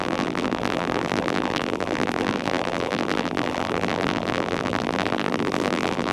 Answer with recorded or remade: remade